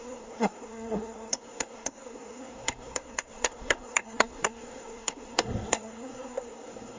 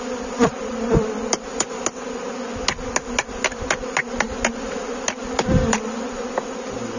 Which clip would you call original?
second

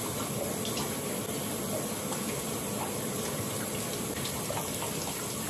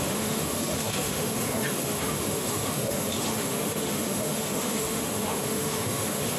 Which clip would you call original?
first